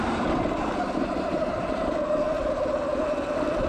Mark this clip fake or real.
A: real